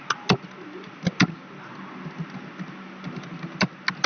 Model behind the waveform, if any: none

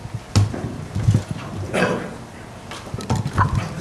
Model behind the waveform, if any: none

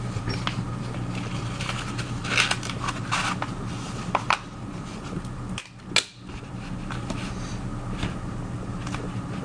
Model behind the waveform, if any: none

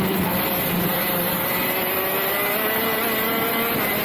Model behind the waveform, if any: none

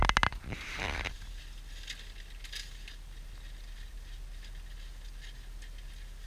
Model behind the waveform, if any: none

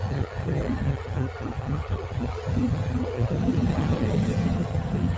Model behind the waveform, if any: vocoder, HiFi-GAN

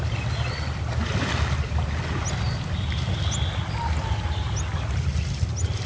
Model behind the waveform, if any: none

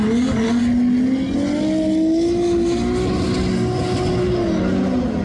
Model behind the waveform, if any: none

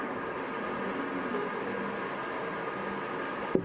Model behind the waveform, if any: none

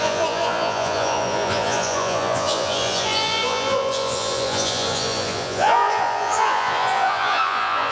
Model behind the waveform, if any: vocoder, Vocos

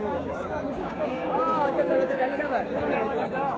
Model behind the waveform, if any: codec, DAC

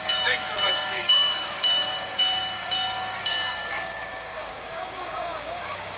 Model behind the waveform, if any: codec, DAC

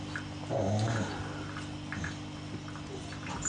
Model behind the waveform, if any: none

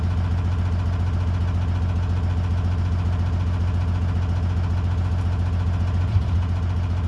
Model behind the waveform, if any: none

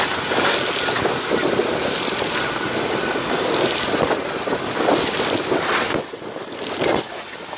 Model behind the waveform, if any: none